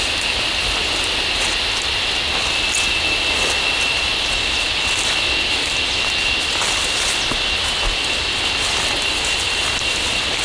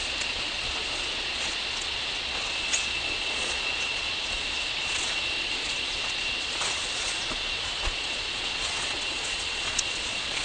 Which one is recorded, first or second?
first